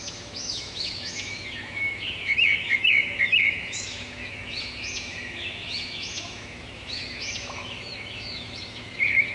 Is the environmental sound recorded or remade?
remade